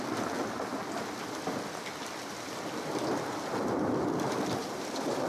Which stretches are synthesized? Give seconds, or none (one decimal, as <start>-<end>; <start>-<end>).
4.6-5.3